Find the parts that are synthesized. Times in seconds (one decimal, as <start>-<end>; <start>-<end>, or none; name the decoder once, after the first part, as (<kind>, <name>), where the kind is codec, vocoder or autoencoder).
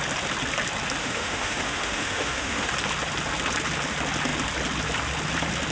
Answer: 1.0-2.7 (autoencoder, DAC-VAE)